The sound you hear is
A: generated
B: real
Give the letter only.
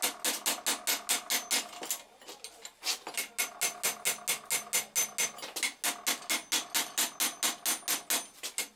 B